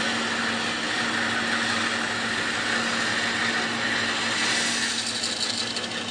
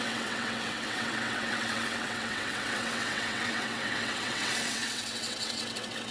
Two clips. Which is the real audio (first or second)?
first